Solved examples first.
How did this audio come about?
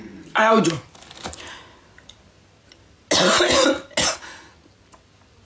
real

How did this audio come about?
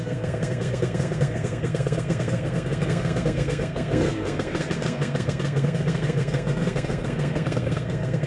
fake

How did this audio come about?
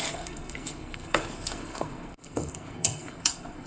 fake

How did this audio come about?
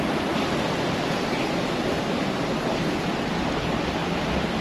real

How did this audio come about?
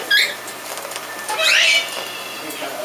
real